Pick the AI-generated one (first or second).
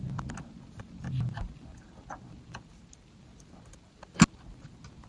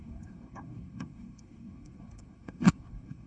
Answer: second